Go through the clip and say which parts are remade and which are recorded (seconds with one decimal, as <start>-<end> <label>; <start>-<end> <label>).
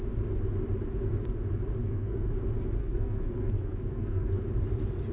0.0-1.8 recorded; 1.8-2.3 remade; 2.3-2.8 recorded; 2.8-4.4 remade; 4.4-5.1 recorded